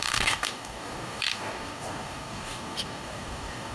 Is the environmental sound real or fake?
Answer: fake